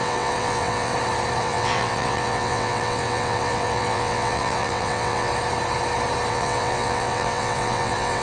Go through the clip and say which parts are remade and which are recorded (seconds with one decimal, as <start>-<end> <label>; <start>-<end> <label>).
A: 0.0-0.9 remade; 0.9-1.4 recorded; 1.4-5.3 remade; 5.3-6.3 recorded; 6.3-8.2 remade